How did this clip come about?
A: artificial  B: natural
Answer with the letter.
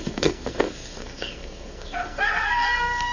A